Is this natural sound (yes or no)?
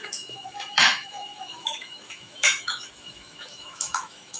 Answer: no